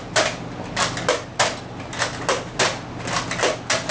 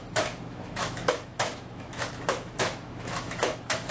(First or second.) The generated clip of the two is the second